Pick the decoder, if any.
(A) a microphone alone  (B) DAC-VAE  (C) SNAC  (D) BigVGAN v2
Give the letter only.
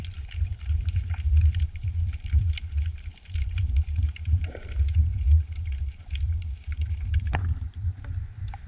D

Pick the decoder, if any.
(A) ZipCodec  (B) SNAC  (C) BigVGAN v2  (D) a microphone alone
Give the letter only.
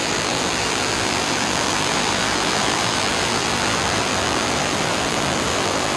C